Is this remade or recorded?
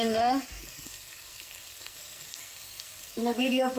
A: remade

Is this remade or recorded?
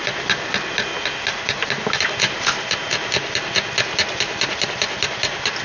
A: recorded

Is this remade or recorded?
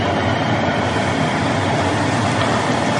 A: recorded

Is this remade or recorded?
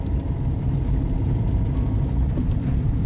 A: recorded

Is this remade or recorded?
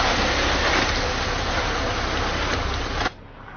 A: recorded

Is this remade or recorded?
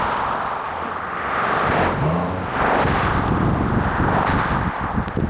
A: recorded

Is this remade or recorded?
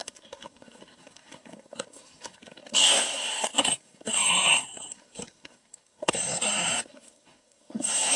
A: remade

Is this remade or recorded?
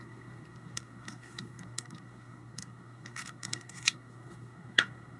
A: remade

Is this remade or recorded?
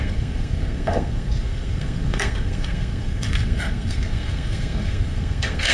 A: remade